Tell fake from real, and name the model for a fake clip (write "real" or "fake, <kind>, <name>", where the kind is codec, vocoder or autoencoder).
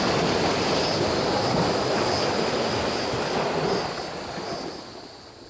real